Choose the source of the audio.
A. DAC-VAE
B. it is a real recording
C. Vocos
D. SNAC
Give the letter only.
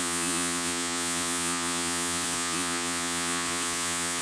C